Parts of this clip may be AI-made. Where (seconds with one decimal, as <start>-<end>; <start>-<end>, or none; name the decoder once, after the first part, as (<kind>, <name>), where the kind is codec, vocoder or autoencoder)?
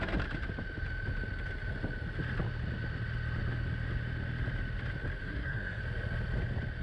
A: 5.2-5.8 (codec, SNAC)